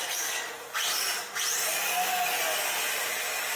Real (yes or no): yes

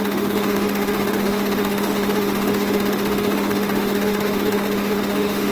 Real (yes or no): no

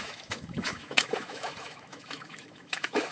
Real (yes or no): no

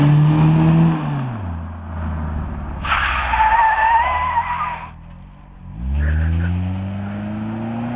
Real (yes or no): yes